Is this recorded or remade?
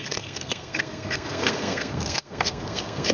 remade